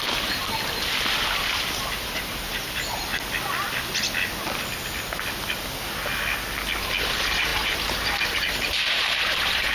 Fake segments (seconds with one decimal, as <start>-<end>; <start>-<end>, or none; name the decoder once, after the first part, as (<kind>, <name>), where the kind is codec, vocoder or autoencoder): 0.0-0.4 (vocoder, BigVGAN v2); 2.0-3.1; 7.1-9.7